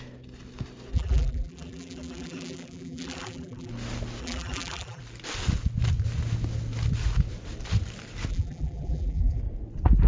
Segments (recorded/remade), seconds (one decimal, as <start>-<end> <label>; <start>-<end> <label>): 0.0-0.9 recorded; 0.9-3.7 remade; 3.7-4.2 recorded; 4.2-5.0 remade; 5.0-8.3 recorded; 8.3-9.4 remade; 9.4-10.1 recorded